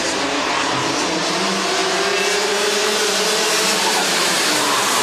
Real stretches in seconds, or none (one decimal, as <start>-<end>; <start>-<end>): none

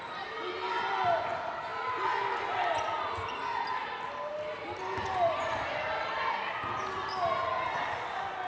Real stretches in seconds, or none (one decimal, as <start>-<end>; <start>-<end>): 0.0-3.8; 6.0-8.5